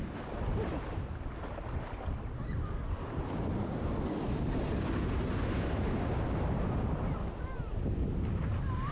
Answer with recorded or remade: recorded